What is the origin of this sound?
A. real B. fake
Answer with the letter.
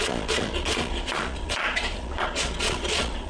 B